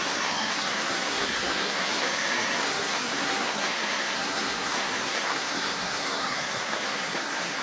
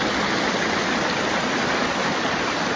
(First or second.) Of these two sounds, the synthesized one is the first